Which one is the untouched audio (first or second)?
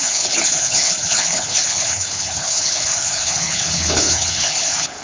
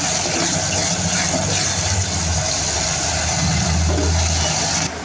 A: second